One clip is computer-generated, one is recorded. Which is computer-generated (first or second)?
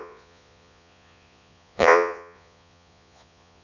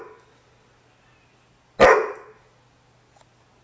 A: first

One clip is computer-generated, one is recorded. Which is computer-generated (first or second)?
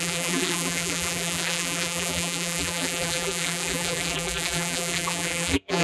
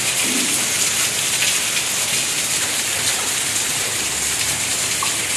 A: first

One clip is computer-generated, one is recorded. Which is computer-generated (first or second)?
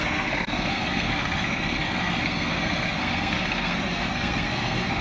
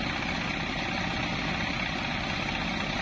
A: first